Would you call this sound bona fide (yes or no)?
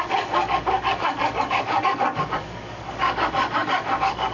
no